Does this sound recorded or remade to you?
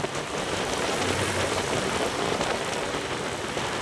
recorded